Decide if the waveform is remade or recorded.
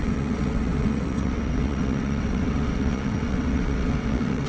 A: remade